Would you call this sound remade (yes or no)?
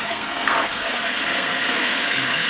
yes